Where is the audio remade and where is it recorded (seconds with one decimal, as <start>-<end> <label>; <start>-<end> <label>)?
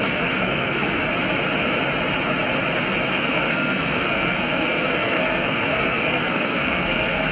0.0-1.0 remade; 1.0-3.1 recorded; 3.1-7.3 remade